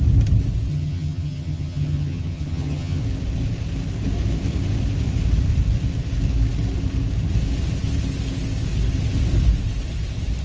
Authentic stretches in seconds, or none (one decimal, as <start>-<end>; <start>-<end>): 0.0-0.7; 3.0-10.4